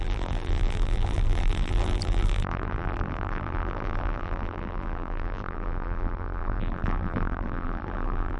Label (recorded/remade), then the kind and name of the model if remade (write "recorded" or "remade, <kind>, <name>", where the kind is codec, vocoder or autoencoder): remade, vocoder, BigVGAN v2